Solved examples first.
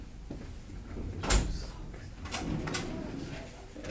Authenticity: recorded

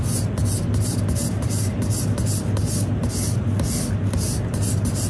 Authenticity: recorded